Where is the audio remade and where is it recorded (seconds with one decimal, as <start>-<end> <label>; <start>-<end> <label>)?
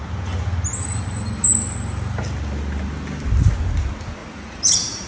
0.0-4.2 recorded; 4.2-5.1 remade